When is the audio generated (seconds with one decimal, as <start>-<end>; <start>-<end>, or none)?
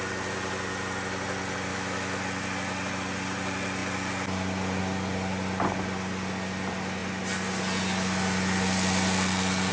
1.7-2.2